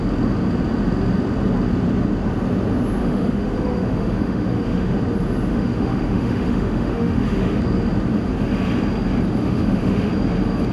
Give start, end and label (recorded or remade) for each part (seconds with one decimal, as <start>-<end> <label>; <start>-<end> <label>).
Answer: 0.0-3.0 recorded; 3.0-5.0 remade; 5.0-5.5 recorded; 5.5-7.6 remade; 7.6-9.4 recorded; 9.4-10.1 remade; 10.1-10.7 recorded